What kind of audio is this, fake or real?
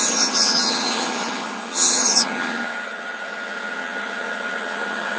fake